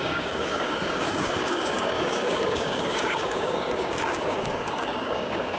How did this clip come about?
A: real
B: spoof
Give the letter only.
B